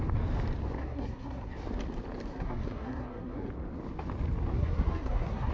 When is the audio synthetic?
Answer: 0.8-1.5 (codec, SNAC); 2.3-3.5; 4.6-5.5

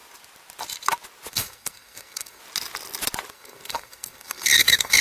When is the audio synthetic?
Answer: 1.3-2.4 (codec, SNAC); 3.3-5.0

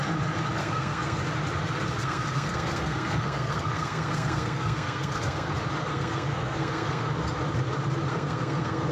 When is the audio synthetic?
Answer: 0.6-1.2 (codec, SNAC); 2.0-5.5; 5.9-7.1; 8.1-8.9

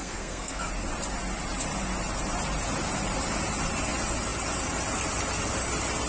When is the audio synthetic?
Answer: 0.0-0.7 (codec, SNAC)

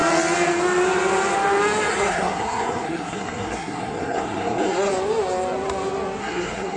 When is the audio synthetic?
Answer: 1.9-4.9 (codec, SNAC); 6.2-6.8